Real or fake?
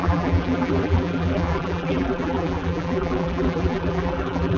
fake